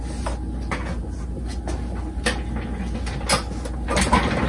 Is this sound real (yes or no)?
yes